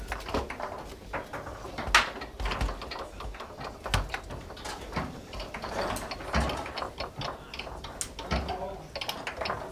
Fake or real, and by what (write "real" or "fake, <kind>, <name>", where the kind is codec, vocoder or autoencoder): real